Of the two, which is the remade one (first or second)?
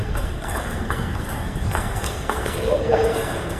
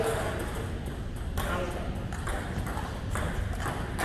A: first